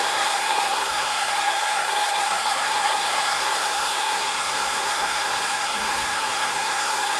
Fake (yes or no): yes